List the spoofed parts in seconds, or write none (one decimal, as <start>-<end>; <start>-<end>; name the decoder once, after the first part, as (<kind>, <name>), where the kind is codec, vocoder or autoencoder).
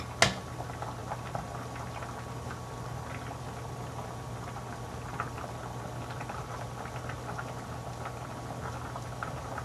none